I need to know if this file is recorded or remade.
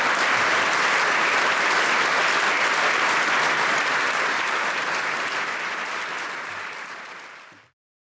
remade